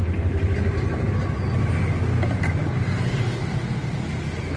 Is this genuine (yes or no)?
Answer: yes